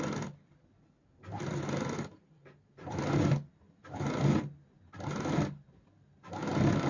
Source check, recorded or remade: recorded